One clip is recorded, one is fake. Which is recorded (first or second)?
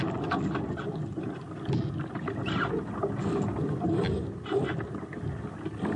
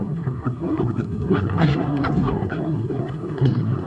first